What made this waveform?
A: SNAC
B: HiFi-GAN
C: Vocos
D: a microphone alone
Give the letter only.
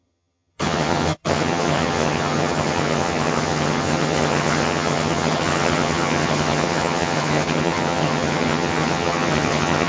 B